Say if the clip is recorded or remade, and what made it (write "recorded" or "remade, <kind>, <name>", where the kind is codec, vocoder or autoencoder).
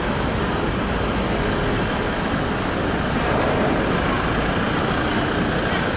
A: recorded